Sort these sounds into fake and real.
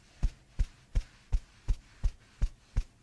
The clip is real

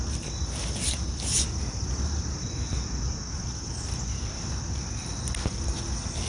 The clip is real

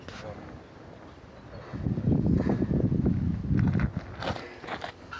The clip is real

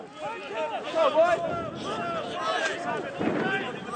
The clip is real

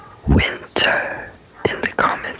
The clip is fake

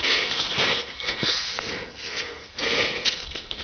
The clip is fake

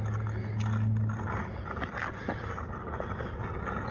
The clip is real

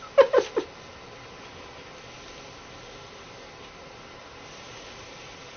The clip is real